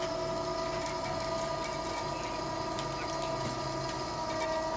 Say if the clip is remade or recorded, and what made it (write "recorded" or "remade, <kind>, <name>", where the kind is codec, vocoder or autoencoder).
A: recorded